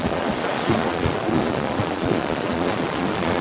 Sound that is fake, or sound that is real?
fake